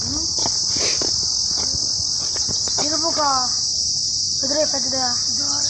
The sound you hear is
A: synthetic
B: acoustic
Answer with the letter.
B